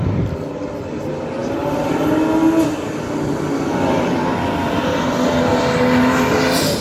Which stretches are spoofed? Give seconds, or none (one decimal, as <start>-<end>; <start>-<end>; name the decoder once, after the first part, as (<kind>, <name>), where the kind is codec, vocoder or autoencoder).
none